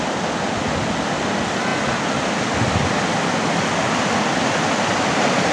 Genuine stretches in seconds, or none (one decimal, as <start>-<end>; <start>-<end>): 0.0-5.5